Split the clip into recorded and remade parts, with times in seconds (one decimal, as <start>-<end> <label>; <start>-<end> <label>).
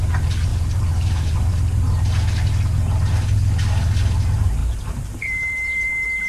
0.0-0.5 recorded; 0.5-1.5 remade; 1.5-4.6 recorded; 4.6-6.3 remade